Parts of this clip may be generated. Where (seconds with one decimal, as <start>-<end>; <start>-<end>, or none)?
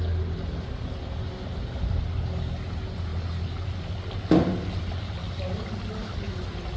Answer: none